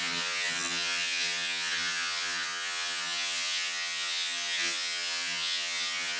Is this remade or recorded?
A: remade